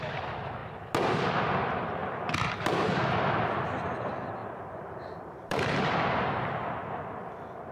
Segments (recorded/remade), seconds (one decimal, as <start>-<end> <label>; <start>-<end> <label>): 0.0-4.4 recorded; 4.4-6.7 remade; 6.7-7.7 recorded

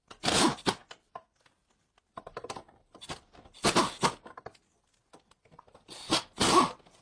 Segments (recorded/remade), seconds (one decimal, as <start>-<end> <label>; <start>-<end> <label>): 0.0-7.0 recorded

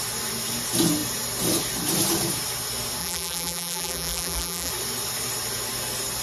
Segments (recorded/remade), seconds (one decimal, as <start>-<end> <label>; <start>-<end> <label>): 0.0-3.0 recorded; 3.0-4.7 remade; 4.7-6.2 recorded

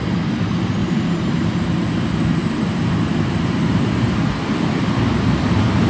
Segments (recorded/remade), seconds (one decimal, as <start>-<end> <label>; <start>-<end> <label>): 0.0-0.8 recorded; 0.8-4.3 remade; 4.3-5.9 recorded

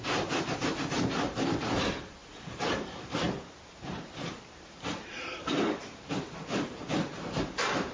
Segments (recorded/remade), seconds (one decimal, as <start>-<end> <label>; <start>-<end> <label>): 0.0-7.9 remade